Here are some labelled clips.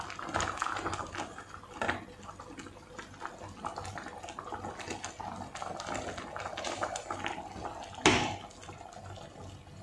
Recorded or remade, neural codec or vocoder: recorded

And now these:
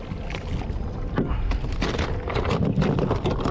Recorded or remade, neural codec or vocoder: recorded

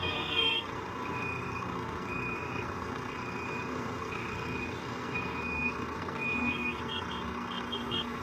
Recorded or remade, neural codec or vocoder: remade, codec, SNAC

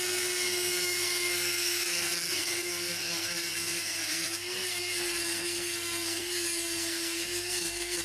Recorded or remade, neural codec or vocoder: remade, codec, SNAC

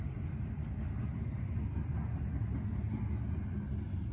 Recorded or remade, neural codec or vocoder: recorded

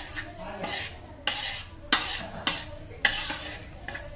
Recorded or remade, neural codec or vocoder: recorded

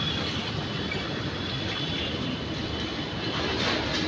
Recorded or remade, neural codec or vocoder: recorded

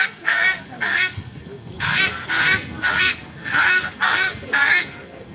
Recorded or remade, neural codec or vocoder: remade, codec, SNAC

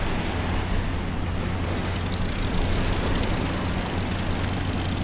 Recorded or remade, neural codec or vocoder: recorded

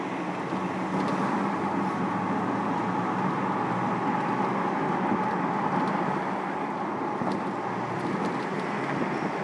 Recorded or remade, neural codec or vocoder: recorded